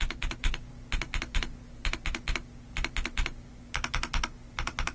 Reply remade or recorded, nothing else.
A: recorded